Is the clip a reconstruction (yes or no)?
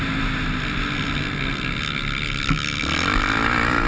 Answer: no